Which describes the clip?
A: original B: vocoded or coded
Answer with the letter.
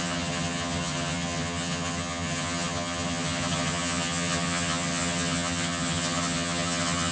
B